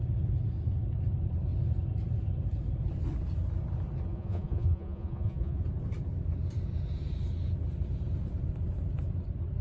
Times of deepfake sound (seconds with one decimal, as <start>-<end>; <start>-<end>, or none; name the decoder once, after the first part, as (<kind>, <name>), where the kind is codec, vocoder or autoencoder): 4.1-5.6 (vocoder, Vocos)